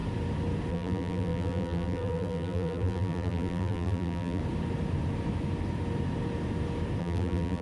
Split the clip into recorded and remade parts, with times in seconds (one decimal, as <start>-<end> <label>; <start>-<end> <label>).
0.0-0.7 recorded; 0.7-4.4 remade; 4.4-7.0 recorded; 7.0-7.6 remade